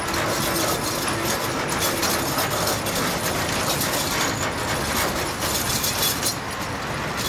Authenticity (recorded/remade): recorded